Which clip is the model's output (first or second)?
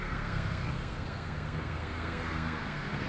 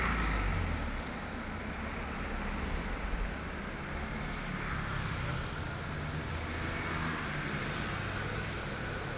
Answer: first